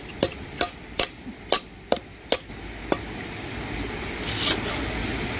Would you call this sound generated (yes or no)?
no